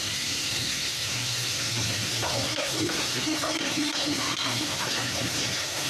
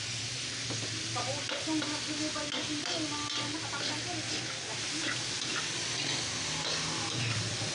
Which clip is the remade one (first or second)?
first